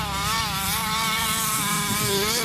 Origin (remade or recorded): recorded